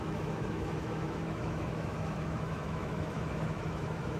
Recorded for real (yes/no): no